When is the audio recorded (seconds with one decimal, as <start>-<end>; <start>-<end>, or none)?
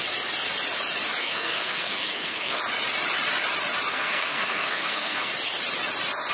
0.0-1.2; 2.6-3.9; 5.3-6.3